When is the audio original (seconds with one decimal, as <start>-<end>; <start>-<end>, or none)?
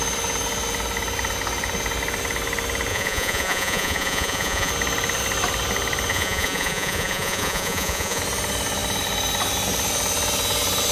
0.0-2.9; 4.7-6.1; 8.2-10.9